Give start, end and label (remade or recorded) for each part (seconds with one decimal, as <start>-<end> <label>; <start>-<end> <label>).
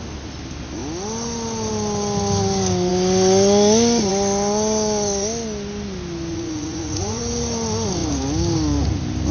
0.0-6.3 recorded; 6.3-7.2 remade; 7.2-9.3 recorded